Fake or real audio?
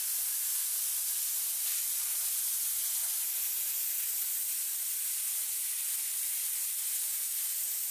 real